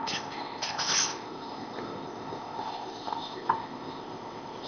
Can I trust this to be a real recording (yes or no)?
no